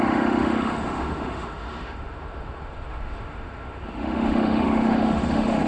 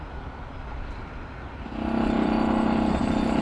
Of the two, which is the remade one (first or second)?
first